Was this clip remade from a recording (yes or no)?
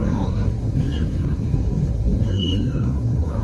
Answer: yes